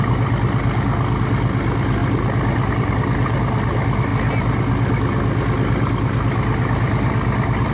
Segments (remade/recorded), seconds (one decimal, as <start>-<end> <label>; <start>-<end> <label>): 0.0-7.7 recorded